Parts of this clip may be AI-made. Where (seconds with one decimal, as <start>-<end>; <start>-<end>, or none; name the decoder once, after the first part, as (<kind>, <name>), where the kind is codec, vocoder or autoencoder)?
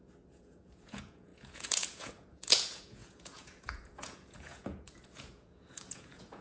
0.0-6.4 (vocoder, Vocos)